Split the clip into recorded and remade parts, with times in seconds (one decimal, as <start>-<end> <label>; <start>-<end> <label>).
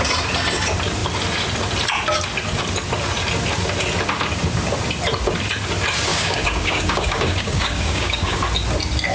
0.0-6.1 recorded; 6.1-8.4 remade; 8.4-9.1 recorded